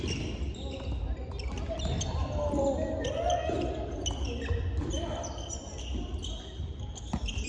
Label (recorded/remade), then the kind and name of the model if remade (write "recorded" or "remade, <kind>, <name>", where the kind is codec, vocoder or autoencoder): recorded